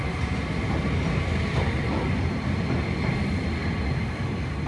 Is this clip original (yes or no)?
yes